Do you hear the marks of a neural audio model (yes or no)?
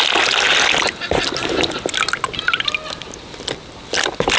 no